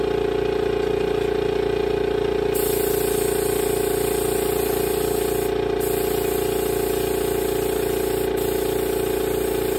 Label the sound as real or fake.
real